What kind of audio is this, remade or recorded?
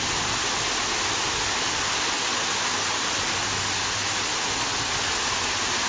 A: recorded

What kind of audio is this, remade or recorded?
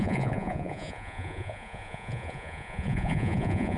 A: remade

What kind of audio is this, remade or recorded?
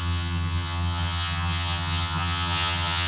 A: remade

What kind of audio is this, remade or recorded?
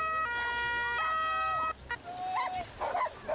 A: recorded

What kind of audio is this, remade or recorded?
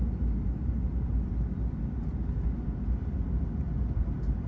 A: recorded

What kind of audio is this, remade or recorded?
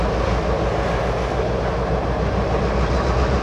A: recorded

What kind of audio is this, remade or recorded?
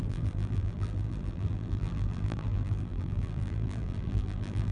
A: remade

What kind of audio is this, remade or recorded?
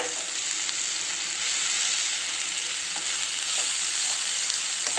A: recorded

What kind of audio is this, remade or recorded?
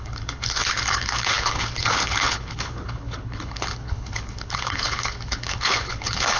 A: remade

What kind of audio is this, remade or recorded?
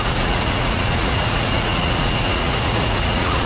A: remade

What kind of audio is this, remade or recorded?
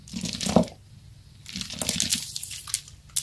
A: recorded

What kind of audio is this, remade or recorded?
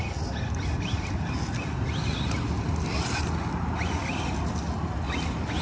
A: recorded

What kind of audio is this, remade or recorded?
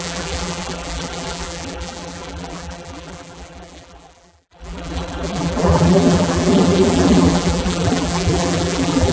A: remade